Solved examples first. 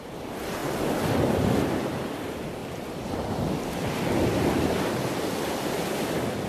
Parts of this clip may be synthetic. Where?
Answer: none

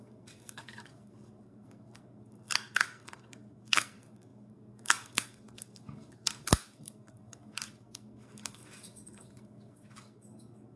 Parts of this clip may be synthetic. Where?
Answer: 0.0-10.8 (codec, SNAC)

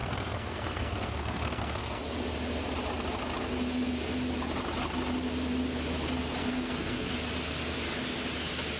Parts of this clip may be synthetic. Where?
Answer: 0.0-2.0 (codec, SNAC); 6.4-7.1